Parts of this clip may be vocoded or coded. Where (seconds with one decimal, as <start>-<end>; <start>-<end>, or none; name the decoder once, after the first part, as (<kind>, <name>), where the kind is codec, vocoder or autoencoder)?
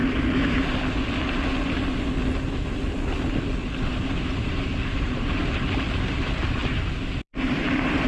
4.9-5.4 (vocoder, BigVGAN v2); 6.0-8.1